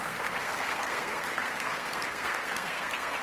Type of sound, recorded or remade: remade